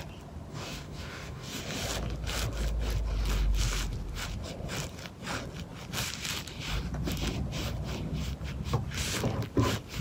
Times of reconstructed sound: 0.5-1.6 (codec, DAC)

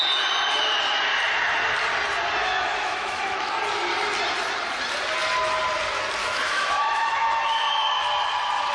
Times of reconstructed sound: 2.4-3.5 (autoencoder, DAC-VAE); 6.2-8.0

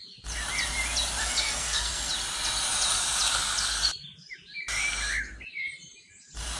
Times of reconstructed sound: 1.2-2.1 (codec, SNAC)

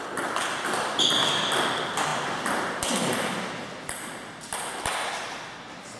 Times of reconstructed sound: none